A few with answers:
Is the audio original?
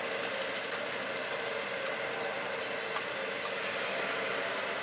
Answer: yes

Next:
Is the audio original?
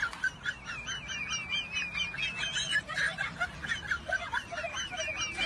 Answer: yes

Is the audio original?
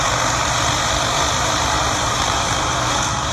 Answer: no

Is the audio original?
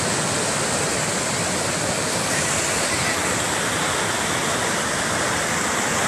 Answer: yes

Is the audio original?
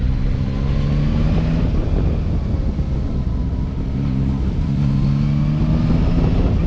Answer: yes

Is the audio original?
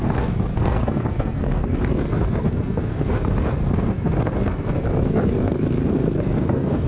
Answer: no